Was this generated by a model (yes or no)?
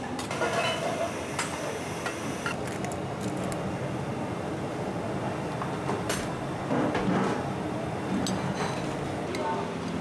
no